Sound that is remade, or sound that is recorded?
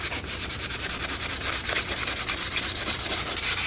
recorded